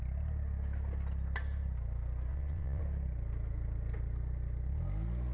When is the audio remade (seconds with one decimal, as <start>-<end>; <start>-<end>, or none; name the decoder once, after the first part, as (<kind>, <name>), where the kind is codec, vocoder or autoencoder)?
2.3-2.8 (vocoder, WaveNeXt)

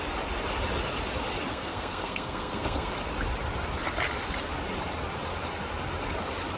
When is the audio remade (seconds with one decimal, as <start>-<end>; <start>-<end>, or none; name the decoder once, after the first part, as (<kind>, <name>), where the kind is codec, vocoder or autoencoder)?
1.5-2.9 (codec, SNAC)

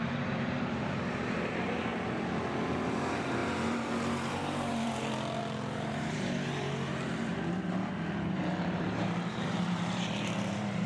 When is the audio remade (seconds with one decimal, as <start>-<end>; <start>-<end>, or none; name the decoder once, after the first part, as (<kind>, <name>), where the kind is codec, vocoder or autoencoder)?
0.0-1.9 (vocoder, BigVGAN v2); 2.9-7.3; 8.6-10.9